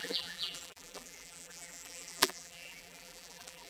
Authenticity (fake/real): fake